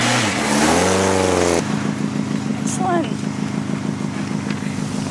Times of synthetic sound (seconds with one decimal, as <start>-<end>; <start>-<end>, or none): none